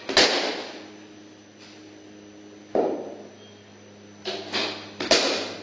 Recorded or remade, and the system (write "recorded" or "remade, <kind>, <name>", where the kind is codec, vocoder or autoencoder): recorded